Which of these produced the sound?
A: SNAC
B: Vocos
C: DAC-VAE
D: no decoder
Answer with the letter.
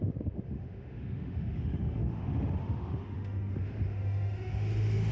C